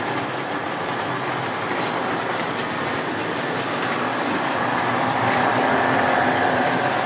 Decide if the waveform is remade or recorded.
recorded